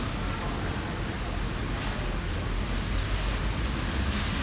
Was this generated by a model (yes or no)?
no